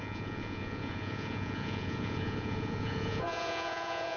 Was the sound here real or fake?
fake